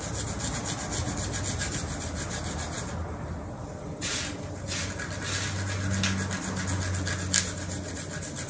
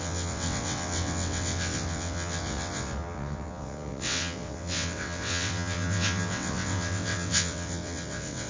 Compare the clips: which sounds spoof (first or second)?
second